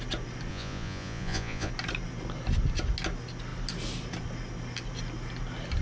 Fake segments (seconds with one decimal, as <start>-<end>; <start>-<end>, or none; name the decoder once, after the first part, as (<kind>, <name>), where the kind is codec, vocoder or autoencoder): 0.5-1.7 (vocoder, Vocos)